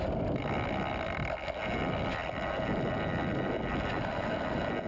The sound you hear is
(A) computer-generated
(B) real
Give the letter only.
B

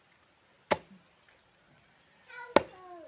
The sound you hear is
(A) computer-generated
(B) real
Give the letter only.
B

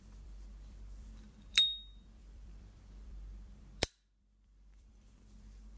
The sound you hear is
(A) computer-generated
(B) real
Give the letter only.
A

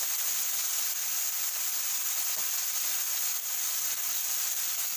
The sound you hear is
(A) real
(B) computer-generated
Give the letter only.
A